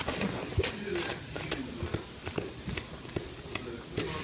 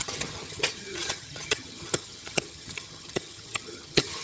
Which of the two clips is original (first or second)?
first